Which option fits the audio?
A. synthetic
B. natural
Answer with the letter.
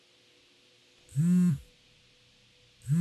B